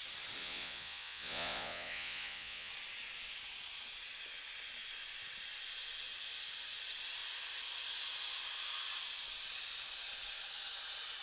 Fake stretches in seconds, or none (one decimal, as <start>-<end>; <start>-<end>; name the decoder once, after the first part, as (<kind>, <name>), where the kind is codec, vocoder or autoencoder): 0.4-2.7 (vocoder, Vocos)